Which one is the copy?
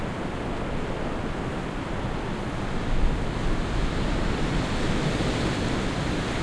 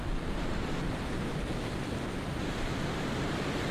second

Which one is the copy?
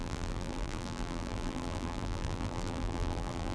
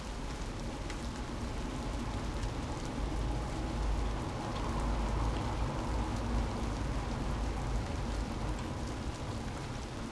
first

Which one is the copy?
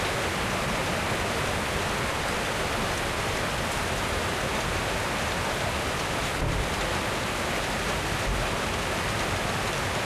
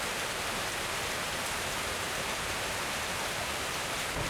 second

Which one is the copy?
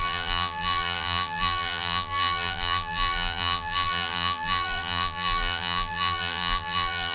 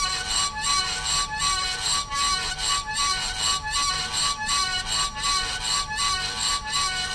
first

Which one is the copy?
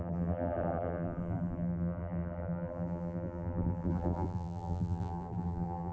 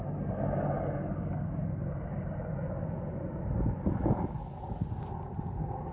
first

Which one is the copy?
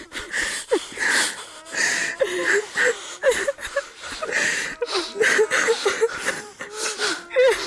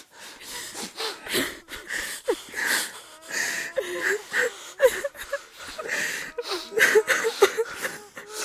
first